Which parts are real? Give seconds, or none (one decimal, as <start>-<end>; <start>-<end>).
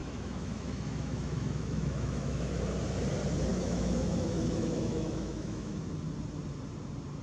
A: 2.6-3.5; 5.8-7.2